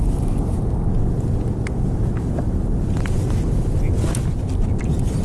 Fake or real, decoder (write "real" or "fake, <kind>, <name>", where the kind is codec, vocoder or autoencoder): real